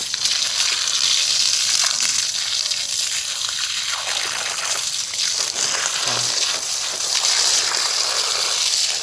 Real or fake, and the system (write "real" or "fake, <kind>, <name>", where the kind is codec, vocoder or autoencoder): real